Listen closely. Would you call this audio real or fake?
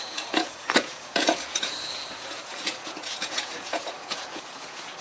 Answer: fake